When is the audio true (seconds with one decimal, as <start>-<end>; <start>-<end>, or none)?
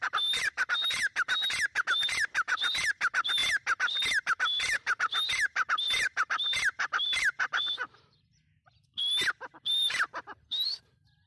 3.4-4.2; 9.0-9.6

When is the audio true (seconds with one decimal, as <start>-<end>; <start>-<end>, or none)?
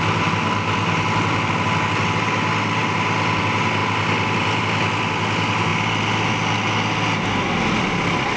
0.0-8.4